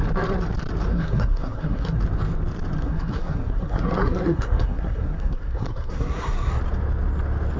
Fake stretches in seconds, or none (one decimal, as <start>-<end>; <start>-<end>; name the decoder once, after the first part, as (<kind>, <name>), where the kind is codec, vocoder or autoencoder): 0.9-2.0 (codec, SNAC); 2.8-6.6